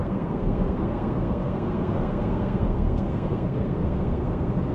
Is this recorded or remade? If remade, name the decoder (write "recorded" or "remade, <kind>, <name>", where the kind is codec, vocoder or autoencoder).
remade, codec, SNAC